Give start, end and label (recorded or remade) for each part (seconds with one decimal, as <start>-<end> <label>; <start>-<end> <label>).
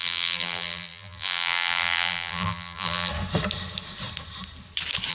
0.0-3.1 remade; 3.1-5.1 recorded